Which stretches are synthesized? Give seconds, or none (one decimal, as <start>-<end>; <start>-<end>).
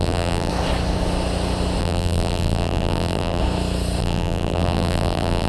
0.0-0.5; 1.8-3.4; 4.0-5.5